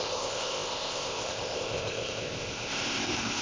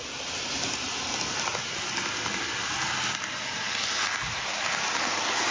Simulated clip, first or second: first